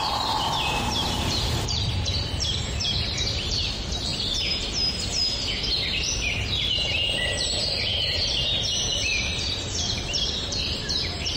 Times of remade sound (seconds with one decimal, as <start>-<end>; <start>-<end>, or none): 0.0-4.1; 6.3-11.4